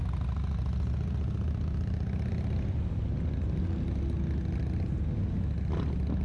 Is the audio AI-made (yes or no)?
no